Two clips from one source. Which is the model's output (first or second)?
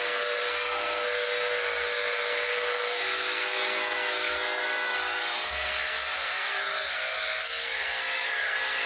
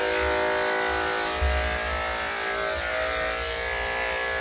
first